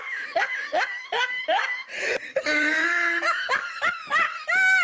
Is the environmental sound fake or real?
fake